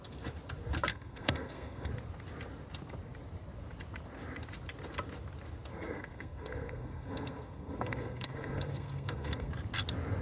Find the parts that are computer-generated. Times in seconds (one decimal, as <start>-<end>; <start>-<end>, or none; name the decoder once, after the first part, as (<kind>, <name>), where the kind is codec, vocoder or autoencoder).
0.9-1.9 (codec, SNAC); 5.7-9.5